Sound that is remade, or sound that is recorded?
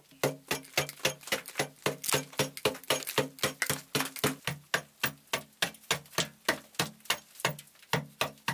recorded